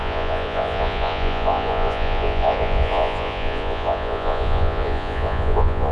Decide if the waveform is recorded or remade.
remade